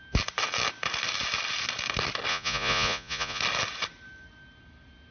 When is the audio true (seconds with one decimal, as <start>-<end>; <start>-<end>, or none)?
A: 0.0-2.3; 3.4-5.1